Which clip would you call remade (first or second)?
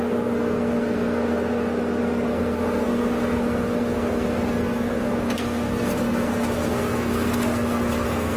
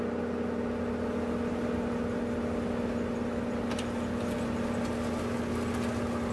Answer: first